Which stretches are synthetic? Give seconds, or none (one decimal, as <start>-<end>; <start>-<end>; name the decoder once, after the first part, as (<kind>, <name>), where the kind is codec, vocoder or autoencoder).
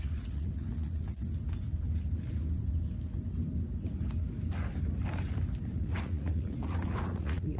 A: 0.0-1.2 (vocoder, Vocos); 5.7-7.6